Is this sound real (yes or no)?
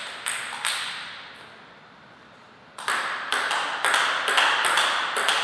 yes